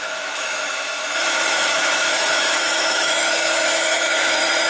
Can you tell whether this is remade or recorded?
remade